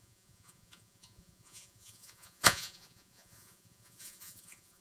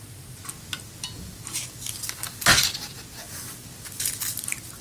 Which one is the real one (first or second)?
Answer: second